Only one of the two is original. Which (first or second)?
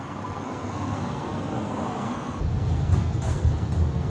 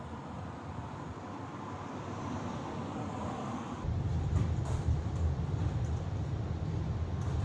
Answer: second